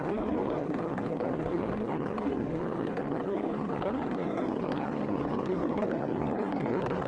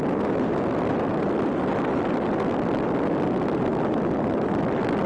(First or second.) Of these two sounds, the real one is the second